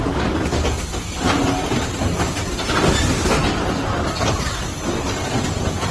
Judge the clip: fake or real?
real